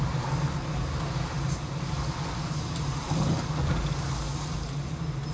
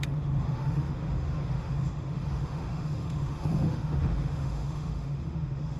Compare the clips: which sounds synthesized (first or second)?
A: second